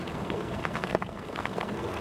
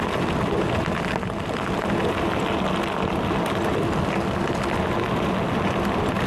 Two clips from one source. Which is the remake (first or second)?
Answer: first